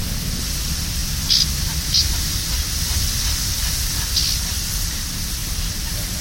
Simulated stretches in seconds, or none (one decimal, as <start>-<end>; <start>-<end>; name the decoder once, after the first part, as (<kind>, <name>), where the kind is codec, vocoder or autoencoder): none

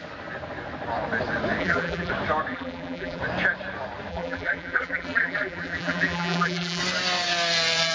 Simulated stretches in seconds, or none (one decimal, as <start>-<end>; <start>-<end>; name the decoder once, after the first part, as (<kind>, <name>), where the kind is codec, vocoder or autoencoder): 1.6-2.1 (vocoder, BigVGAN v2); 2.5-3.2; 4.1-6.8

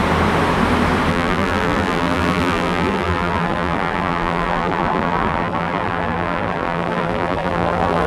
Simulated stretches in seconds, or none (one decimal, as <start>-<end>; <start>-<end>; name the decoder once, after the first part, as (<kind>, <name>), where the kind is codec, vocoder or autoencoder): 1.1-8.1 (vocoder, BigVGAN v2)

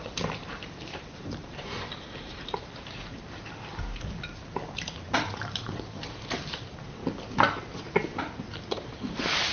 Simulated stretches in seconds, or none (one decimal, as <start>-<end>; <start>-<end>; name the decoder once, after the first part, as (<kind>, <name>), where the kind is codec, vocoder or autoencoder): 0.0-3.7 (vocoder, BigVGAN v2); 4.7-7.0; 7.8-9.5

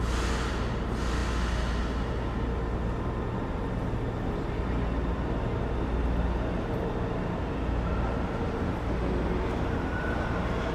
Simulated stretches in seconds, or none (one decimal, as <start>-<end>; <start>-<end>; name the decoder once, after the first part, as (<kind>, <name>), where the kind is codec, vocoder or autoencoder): none

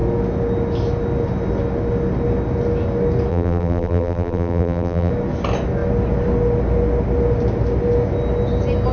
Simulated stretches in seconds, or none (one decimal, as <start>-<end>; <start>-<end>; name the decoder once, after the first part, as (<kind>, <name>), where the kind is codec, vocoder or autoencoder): 3.3-5.1 (vocoder, BigVGAN v2)